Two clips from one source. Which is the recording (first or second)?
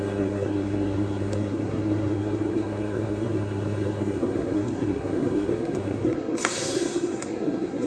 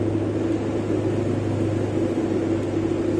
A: second